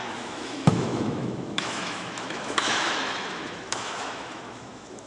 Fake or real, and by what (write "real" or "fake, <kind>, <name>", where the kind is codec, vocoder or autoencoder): fake, autoencoder, DAC-VAE